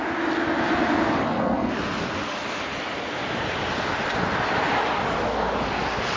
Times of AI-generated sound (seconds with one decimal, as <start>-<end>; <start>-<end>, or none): 1.2-1.7

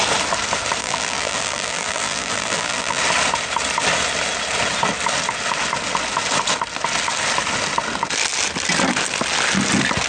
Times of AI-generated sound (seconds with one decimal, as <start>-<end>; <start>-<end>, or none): 0.8-3.0